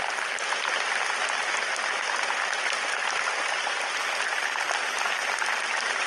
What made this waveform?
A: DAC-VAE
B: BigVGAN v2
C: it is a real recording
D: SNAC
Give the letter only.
C